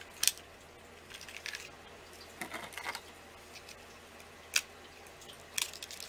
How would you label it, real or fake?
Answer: real